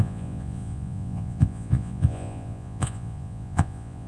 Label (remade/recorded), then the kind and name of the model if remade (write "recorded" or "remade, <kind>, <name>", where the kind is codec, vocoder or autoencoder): remade, vocoder, Vocos